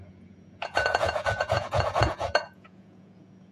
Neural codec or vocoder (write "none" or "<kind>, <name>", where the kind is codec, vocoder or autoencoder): vocoder, Vocos